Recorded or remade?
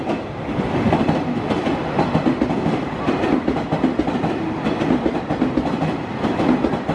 recorded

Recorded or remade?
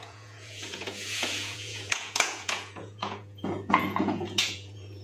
remade